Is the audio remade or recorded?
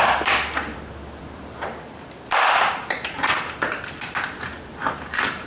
remade